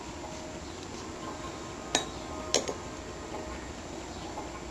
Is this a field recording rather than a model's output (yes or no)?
yes